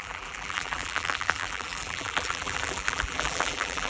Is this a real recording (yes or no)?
no